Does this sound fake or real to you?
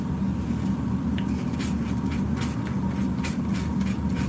real